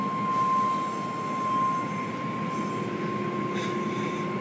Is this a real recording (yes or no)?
yes